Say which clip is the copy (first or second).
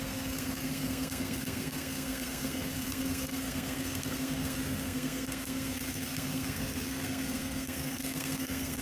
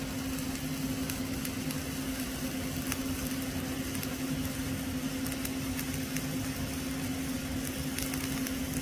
first